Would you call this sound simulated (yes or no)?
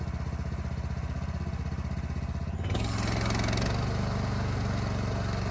no